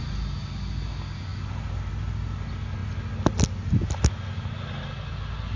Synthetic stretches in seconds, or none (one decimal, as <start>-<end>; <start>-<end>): none